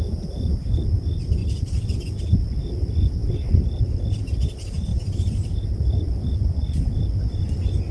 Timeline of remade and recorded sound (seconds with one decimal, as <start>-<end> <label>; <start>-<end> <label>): 0.0-1.4 recorded; 1.4-2.8 remade; 2.8-4.9 recorded; 4.9-6.2 remade; 6.2-7.9 recorded